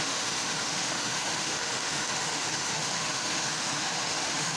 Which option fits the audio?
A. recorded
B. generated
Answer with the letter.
B